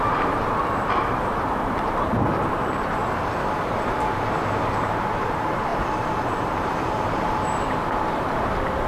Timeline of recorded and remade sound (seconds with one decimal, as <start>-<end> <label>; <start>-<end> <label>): 0.0-3.0 remade; 3.0-3.5 recorded; 3.5-8.9 remade